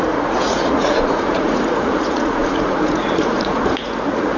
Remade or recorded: remade